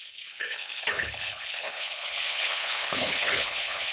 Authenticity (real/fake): fake